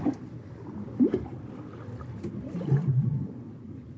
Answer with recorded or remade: recorded